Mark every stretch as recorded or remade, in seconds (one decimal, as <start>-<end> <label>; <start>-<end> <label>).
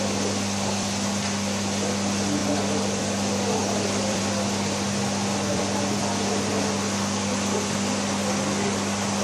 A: 0.0-3.6 recorded; 3.6-4.2 remade; 4.2-5.5 recorded; 5.5-6.5 remade; 6.5-9.2 recorded